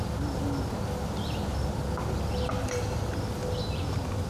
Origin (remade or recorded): recorded